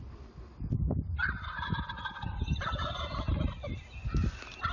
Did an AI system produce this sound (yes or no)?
no